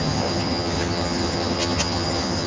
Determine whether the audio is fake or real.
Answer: fake